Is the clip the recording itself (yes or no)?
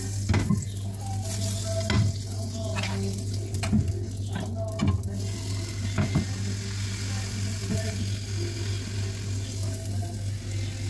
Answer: yes